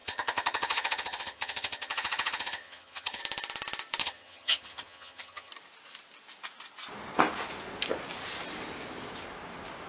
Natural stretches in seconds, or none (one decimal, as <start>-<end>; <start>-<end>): 3.2-4.0; 5.5-9.9